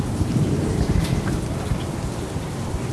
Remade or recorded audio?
recorded